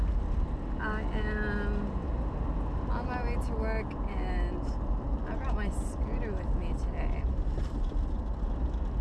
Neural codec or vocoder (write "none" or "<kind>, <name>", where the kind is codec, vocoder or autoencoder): none